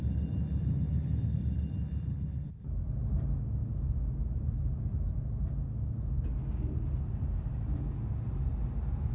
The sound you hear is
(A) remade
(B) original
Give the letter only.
B